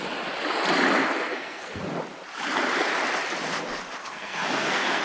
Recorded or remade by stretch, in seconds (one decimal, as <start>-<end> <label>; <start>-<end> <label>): 0.0-1.0 recorded; 1.0-1.8 remade; 1.8-4.0 recorded; 4.0-5.0 remade